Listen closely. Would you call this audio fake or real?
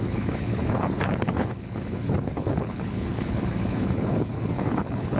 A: fake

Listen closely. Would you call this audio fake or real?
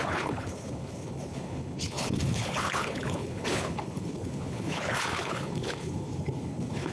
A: fake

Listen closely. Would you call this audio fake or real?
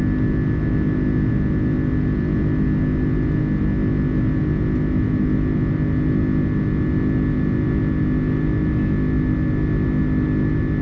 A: real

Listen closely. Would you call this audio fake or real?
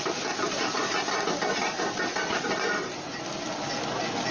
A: real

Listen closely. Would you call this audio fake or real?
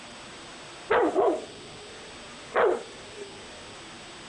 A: real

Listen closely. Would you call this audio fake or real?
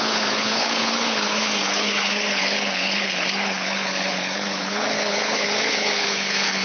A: fake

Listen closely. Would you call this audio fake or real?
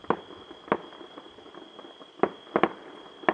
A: real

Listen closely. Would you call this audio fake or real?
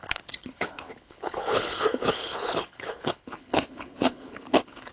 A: fake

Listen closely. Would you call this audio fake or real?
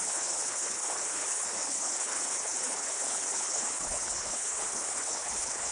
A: fake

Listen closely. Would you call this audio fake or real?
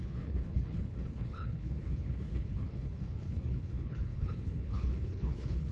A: fake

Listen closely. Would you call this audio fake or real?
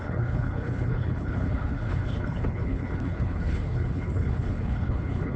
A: fake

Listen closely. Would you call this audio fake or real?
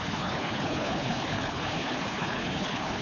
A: fake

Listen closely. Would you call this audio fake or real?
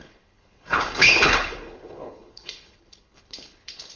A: fake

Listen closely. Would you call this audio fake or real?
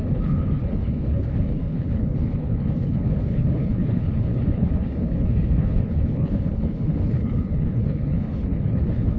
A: fake